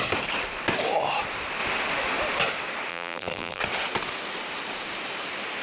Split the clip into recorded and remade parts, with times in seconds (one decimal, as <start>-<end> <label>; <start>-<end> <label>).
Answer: 0.0-2.9 recorded; 2.9-3.6 remade; 3.6-5.6 recorded